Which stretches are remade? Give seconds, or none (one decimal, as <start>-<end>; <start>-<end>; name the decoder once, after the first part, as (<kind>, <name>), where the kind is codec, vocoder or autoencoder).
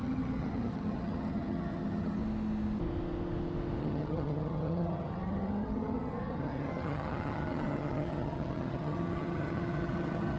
0.0-2.2 (vocoder, HiFi-GAN); 3.8-10.4